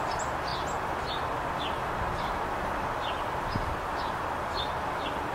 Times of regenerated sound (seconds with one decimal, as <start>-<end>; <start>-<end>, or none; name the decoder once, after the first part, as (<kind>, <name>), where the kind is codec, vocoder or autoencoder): none